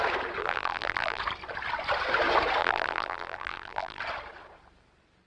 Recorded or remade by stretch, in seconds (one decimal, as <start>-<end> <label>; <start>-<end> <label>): 0.0-0.4 recorded; 0.4-1.2 remade; 1.2-2.6 recorded; 2.6-4.0 remade; 4.0-5.3 recorded